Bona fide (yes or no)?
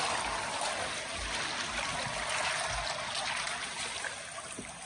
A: yes